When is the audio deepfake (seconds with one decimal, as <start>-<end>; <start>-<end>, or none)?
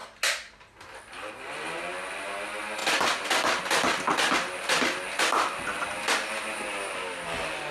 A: none